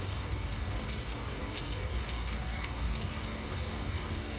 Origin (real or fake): fake